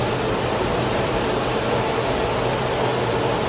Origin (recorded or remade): recorded